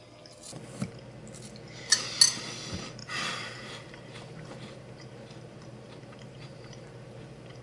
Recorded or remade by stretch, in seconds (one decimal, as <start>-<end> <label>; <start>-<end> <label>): 0.0-3.0 recorded; 3.0-7.6 remade